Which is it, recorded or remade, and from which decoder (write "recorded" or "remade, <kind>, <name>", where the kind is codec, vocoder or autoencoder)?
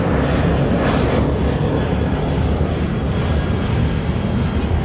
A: recorded